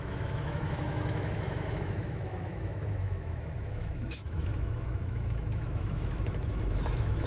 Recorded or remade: remade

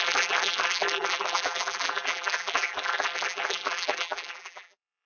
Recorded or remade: remade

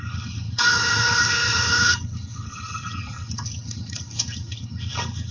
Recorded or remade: remade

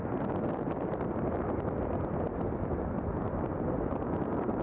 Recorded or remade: recorded